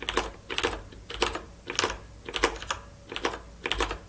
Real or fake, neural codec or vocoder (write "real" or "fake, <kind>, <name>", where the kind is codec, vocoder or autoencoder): real